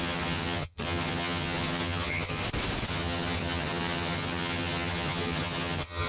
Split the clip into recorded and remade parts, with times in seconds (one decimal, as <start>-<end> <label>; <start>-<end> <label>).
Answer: 0.0-2.4 remade; 2.4-2.9 recorded; 2.9-6.1 remade